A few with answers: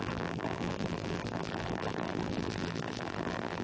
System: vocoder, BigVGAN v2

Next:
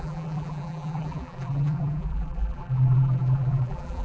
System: vocoder, BigVGAN v2